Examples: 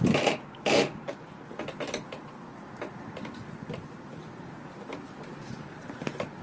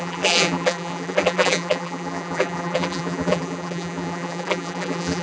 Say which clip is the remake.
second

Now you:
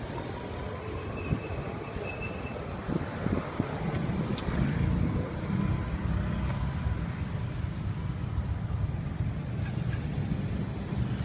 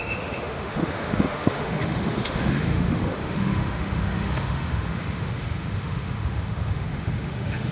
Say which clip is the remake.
second